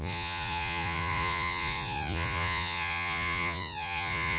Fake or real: fake